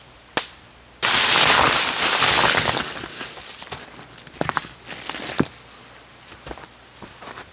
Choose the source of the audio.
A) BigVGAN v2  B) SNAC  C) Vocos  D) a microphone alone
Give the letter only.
D